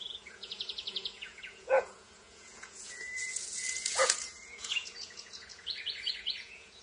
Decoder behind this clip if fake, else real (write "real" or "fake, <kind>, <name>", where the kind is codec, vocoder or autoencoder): fake, vocoder, Vocos